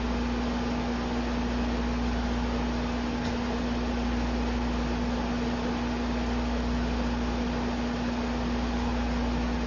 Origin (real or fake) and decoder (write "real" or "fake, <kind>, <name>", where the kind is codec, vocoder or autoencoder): real